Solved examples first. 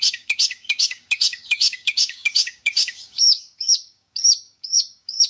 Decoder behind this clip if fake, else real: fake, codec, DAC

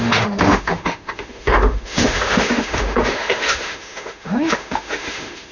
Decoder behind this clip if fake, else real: fake, autoencoder, DAC-VAE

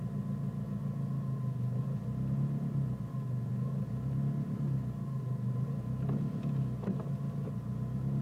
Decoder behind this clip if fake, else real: real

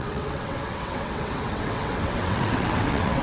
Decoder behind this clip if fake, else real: fake, vocoder, WaveNeXt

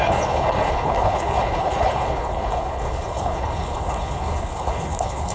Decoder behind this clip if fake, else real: fake, codec, HILCodec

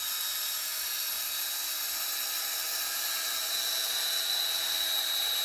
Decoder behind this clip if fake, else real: real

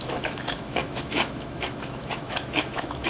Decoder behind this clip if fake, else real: fake, autoencoder, DAC-VAE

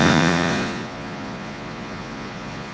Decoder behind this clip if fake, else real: fake, vocoder, Vocos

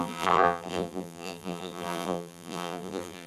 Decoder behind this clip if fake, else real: fake, vocoder, BigVGAN v2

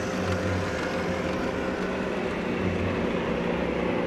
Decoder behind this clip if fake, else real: real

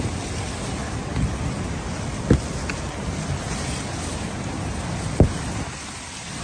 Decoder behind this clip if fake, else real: real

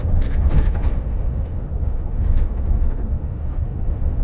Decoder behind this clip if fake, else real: fake, autoencoder, DAC-VAE